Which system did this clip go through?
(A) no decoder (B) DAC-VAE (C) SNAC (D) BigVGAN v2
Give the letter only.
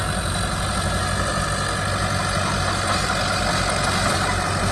A